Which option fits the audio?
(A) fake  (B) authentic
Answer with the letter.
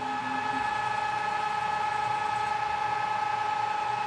B